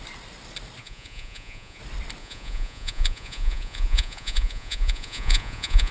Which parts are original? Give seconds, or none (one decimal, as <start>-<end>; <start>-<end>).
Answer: 0.0-0.8; 1.8-2.2